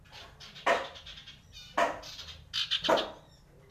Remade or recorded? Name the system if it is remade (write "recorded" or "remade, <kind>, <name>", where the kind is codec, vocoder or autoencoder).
recorded